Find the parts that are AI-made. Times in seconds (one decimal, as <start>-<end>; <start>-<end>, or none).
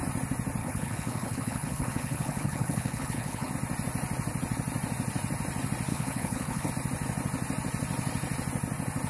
0.6-3.5; 5.9-6.7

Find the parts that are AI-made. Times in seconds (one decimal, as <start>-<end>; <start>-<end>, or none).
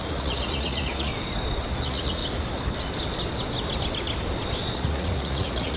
0.0-1.1; 1.8-2.2; 4.7-5.8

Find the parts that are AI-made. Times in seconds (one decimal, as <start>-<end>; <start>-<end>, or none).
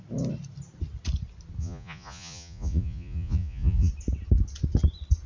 1.6-3.9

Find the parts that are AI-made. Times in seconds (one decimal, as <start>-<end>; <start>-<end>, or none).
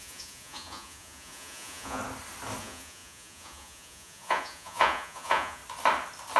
0.0-2.0; 2.6-5.6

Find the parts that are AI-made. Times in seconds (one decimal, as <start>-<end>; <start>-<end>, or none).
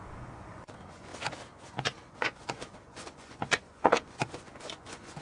0.0-1.1; 1.7-5.2